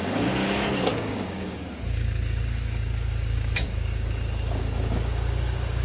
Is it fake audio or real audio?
fake